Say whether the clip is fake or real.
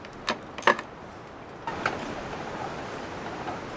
real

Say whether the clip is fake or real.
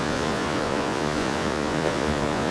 fake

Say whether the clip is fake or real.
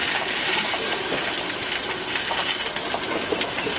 real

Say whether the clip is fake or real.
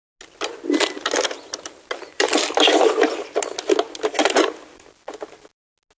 real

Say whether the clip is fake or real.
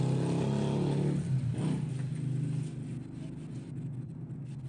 real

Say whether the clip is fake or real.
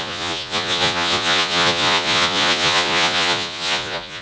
fake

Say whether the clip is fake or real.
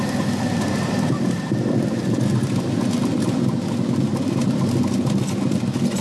real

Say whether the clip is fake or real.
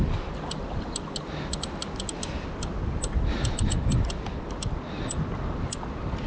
real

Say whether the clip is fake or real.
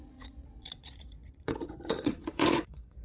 fake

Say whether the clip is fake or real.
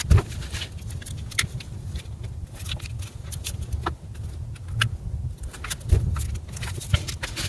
real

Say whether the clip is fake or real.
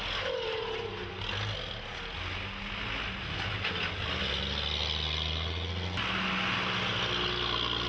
real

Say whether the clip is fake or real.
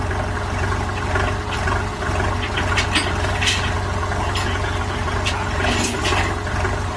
real